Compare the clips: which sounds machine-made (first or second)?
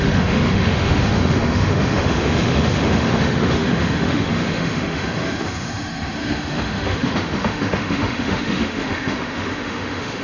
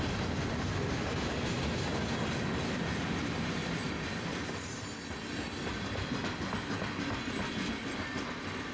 first